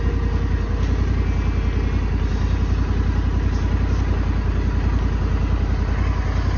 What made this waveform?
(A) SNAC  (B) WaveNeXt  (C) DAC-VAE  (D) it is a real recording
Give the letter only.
D